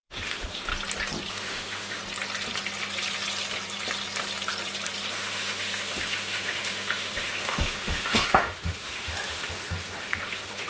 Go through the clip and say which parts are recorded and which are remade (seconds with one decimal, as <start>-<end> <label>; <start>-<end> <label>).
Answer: 0.0-0.7 remade; 0.7-1.3 recorded; 1.3-2.0 remade; 2.0-5.1 recorded; 5.1-10.7 remade